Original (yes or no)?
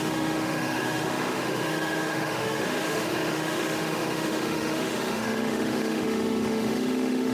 no